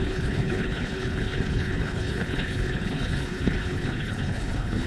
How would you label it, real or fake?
fake